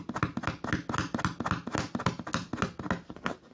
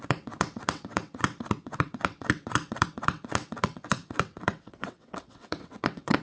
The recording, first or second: first